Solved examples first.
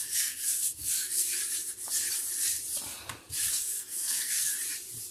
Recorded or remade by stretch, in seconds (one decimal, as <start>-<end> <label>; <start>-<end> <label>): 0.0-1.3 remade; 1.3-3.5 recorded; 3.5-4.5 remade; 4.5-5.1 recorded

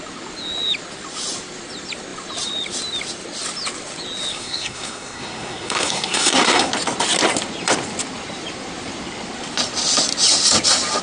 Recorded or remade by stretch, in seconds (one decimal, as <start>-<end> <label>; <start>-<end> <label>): 0.0-4.3 recorded; 4.3-6.7 remade; 6.7-11.0 recorded

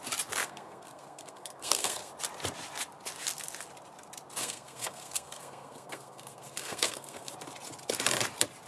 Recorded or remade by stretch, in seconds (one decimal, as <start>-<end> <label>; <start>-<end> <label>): 0.0-0.4 recorded; 0.4-2.1 remade; 2.1-4.4 recorded; 4.4-7.3 remade; 7.3-8.7 recorded

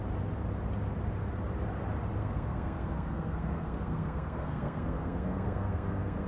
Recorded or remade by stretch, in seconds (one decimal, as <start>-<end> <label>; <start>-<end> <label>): 0.0-2.2 recorded; 2.2-6.3 remade

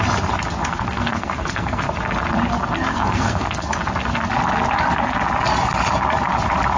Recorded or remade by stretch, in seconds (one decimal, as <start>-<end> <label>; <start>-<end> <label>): 0.0-0.6 recorded; 0.6-1.8 remade; 1.8-2.9 recorded; 2.9-3.7 remade; 3.7-6.8 recorded

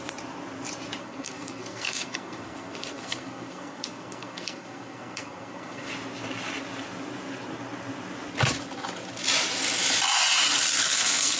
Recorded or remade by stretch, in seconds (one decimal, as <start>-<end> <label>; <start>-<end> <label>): 0.0-1.0 recorded; 1.0-5.9 remade; 5.9-10.8 recorded; 10.8-11.4 remade